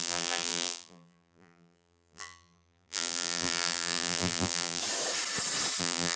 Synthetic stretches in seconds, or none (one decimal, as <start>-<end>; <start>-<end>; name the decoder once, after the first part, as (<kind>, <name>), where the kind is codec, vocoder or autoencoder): 0.0-4.8 (vocoder, BigVGAN v2); 5.8-6.2